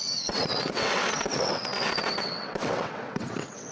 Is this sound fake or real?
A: fake